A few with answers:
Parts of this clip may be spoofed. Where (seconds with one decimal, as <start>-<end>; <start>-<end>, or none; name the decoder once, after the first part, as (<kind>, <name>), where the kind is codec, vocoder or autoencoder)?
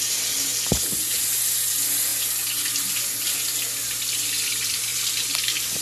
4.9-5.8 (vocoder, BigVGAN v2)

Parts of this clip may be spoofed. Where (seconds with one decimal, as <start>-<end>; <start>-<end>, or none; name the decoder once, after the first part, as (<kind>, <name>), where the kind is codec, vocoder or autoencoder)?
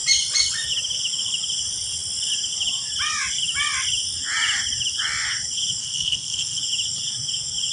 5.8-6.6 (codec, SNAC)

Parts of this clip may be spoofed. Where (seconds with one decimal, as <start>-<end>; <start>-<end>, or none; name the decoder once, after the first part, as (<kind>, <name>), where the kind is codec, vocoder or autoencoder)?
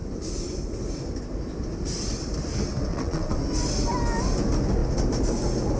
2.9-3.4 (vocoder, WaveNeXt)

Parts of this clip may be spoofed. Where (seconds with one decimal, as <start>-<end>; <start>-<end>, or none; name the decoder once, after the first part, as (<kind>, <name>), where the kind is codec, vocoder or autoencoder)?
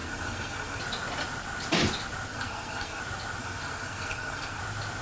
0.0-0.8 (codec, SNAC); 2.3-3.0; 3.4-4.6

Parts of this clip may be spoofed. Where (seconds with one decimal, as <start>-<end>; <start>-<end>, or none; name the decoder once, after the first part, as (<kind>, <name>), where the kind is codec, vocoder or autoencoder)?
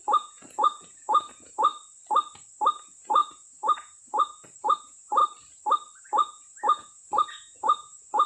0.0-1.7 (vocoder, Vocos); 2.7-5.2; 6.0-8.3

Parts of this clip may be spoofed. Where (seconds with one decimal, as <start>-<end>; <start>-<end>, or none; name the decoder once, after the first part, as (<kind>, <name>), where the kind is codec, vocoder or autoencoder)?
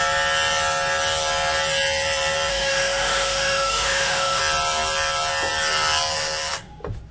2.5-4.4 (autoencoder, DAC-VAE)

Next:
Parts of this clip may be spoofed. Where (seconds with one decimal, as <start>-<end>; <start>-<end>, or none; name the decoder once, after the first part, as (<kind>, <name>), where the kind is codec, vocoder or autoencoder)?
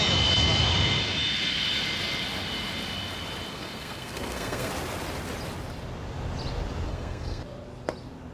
3.5-4.7 (codec, SNAC); 6.9-7.4